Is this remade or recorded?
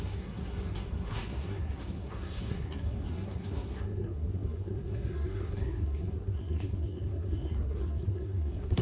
remade